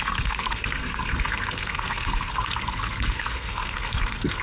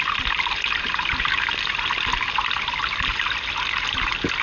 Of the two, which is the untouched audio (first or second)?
second